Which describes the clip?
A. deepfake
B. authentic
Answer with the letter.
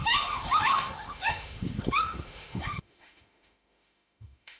A